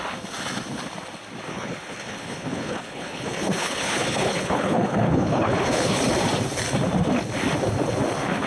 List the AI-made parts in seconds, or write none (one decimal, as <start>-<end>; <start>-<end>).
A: 1.5-6.0

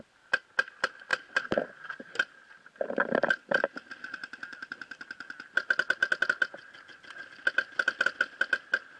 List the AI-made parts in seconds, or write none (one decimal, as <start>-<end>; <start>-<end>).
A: 0.0-6.0; 7.5-9.0

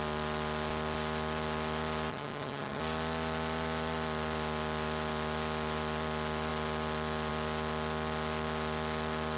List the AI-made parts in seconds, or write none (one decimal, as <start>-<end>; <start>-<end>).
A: 2.1-2.8